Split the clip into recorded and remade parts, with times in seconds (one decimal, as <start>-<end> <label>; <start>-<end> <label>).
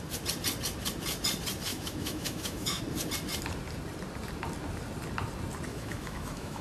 0.0-1.7 recorded; 1.7-2.8 remade; 2.8-5.7 recorded; 5.7-6.6 remade